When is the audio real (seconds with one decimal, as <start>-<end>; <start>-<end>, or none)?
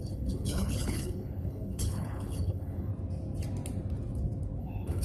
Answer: 2.9-4.6